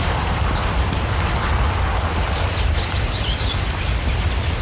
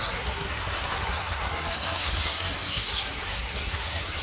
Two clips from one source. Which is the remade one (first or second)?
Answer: second